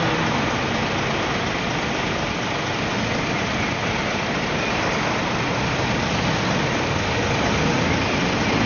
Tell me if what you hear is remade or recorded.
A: recorded